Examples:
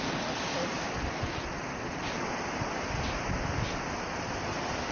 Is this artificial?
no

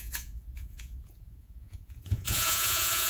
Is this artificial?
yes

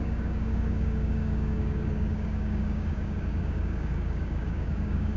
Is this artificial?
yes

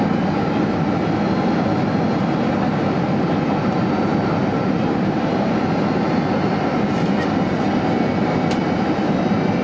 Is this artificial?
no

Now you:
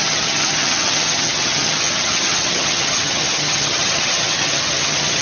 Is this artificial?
yes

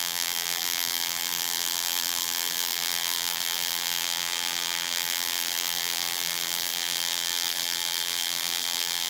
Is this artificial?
yes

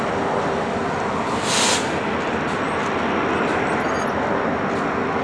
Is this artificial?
no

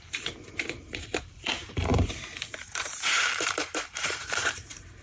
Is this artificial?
yes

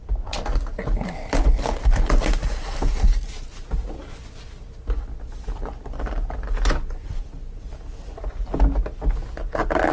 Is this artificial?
no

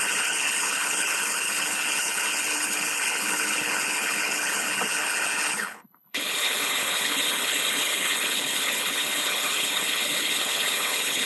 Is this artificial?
yes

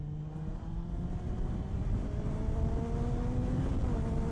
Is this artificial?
no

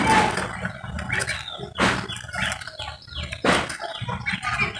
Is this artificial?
no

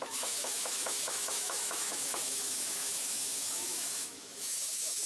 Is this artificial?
yes